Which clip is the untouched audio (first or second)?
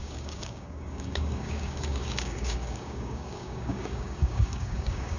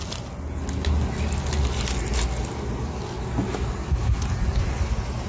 second